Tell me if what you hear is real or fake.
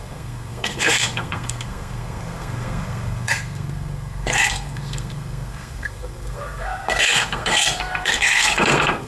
fake